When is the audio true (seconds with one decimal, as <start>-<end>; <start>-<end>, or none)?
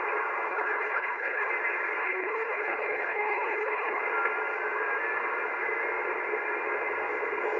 0.0-0.5; 1.5-2.0; 4.0-7.6